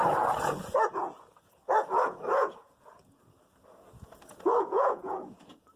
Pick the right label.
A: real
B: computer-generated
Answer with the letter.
B